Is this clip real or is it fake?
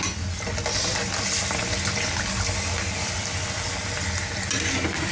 real